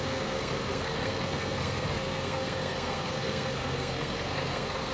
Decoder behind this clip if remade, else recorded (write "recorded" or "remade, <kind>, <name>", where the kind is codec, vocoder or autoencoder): remade, codec, SNAC